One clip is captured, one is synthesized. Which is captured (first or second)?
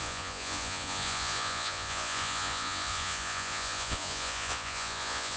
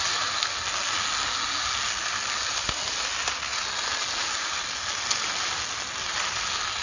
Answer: second